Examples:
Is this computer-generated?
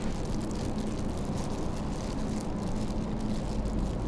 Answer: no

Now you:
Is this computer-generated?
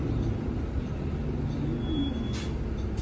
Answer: no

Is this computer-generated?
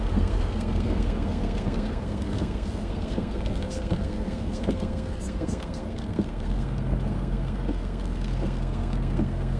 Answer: yes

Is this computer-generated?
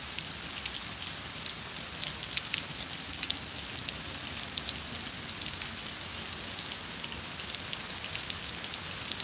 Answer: no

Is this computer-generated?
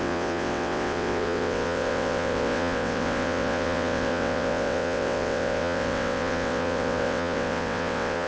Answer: yes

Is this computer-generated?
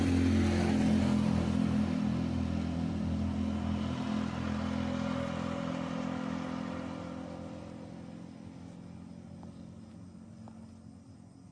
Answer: no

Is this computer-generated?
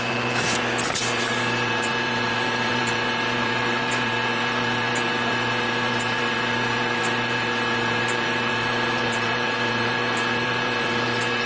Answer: yes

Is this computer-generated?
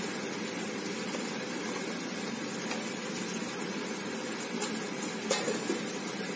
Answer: no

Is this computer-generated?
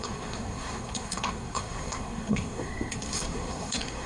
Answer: yes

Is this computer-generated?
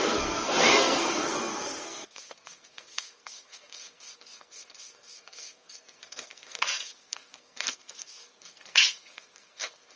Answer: yes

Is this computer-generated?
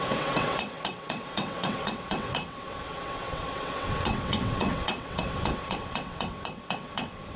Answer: yes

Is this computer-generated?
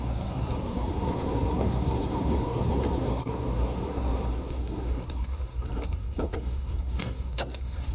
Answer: yes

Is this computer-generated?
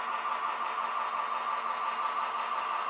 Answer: no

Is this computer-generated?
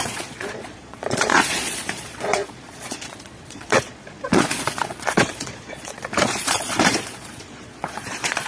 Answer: yes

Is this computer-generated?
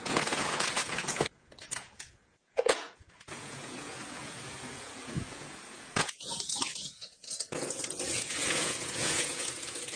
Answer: yes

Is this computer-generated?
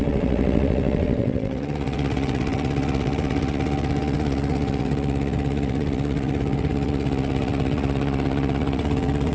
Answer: yes